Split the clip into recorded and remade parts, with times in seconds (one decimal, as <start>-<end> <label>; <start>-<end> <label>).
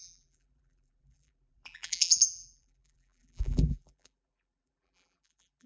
0.0-5.7 remade